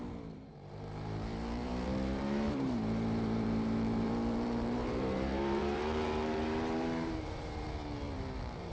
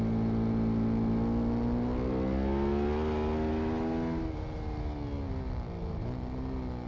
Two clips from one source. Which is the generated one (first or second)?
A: first